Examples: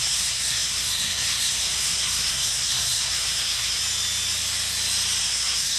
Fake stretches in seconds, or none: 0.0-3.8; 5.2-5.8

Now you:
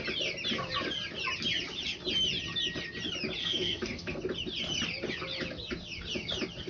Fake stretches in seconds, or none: 3.4-4.2

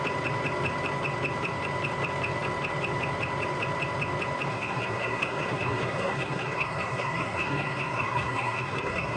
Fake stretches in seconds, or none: 4.5-9.2

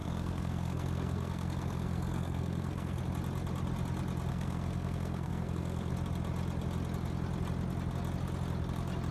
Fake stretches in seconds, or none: 0.0-3.0; 4.3-5.9

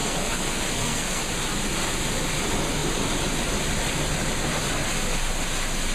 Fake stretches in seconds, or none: 0.0-1.2

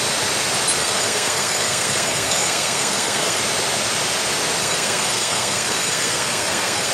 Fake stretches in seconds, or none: 0.8-3.4; 4.6-6.9

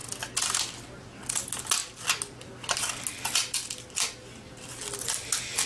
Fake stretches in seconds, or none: none

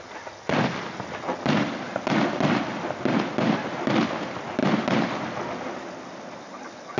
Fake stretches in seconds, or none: none